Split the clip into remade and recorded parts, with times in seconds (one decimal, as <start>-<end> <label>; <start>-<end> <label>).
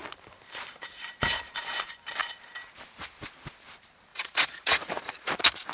0.0-4.1 recorded; 4.1-5.3 remade; 5.3-5.7 recorded